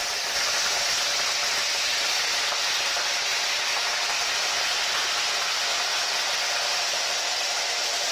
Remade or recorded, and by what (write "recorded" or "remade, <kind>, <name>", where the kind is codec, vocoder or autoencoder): recorded